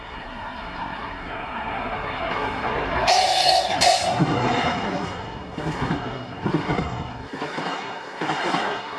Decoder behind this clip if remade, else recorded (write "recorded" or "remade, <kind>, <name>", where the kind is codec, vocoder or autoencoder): remade, codec, SNAC